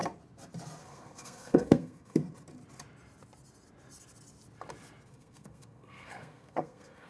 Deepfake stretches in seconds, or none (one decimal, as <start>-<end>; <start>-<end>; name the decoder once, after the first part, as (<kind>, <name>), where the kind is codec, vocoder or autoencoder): 0.8-2.2 (codec, SNAC); 5.1-7.1

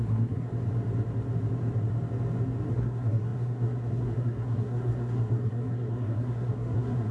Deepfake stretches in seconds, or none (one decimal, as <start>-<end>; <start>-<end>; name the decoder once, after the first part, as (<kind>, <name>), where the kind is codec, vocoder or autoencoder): 0.0-0.5 (codec, SNAC); 2.7-7.1

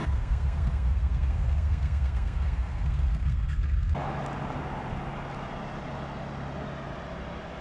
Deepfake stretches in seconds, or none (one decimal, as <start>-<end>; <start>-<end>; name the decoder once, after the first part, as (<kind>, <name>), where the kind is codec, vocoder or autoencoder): 0.0-3.9 (codec, SNAC)

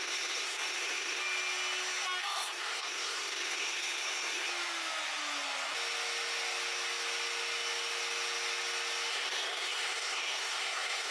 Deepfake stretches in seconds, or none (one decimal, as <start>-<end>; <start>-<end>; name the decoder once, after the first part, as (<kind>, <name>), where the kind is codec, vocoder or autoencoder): 0.0-1.2 (codec, SNAC); 2.2-4.5; 9.1-11.1

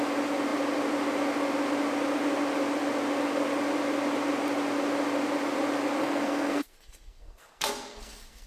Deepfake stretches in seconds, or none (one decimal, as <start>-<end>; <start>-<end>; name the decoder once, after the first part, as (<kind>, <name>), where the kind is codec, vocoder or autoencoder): 6.0-8.5 (codec, SNAC)